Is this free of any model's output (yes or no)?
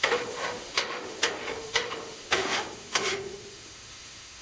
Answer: no